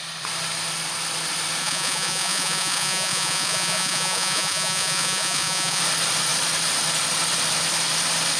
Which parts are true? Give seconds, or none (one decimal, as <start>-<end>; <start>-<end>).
0.0-1.6; 5.8-8.4

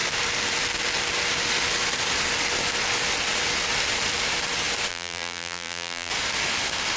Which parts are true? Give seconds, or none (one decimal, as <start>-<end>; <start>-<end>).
0.0-4.9; 6.1-7.0